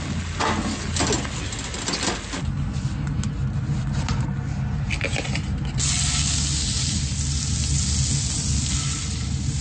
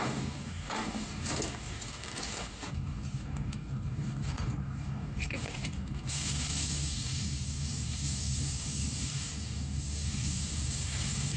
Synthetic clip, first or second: second